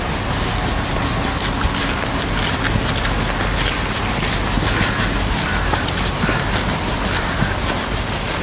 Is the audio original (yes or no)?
yes